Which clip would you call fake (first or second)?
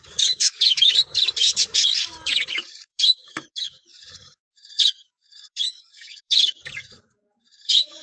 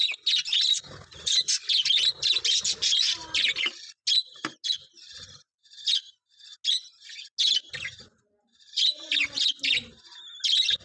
first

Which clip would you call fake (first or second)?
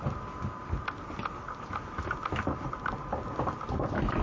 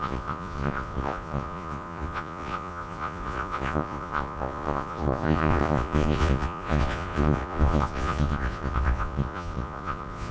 second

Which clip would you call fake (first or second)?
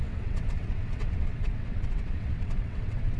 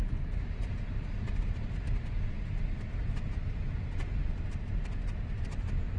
first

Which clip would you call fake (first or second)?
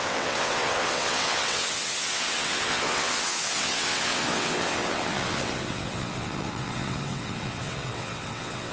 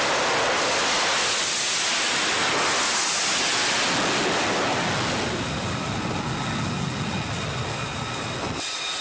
first